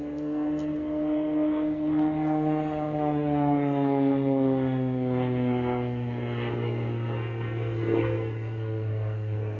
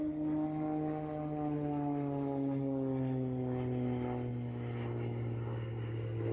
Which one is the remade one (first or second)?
first